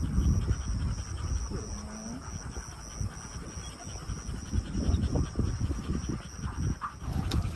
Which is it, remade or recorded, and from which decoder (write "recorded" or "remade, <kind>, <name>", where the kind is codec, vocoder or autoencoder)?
recorded